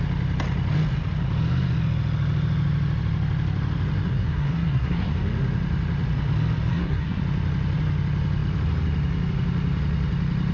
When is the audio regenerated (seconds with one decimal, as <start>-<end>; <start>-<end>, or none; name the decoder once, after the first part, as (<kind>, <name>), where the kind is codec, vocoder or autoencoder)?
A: 4.1-5.1 (codec, SNAC); 6.7-7.2